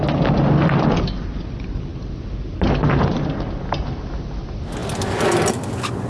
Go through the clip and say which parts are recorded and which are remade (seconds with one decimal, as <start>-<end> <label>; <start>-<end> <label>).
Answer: 0.0-6.1 recorded